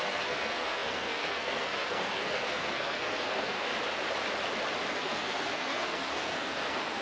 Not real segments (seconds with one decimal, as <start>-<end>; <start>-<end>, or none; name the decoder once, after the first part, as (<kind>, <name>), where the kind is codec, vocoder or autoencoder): 0.0-3.7 (codec, SNAC); 4.9-7.0